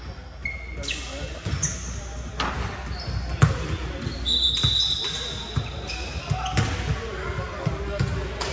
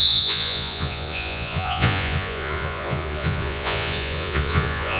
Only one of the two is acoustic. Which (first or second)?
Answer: first